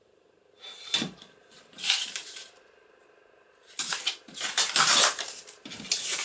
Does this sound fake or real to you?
fake